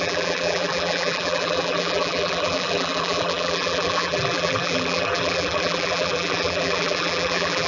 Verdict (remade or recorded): remade